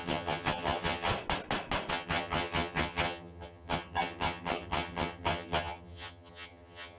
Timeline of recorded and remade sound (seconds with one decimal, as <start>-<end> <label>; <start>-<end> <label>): 0.0-1.1 remade; 1.1-1.9 recorded; 1.9-7.0 remade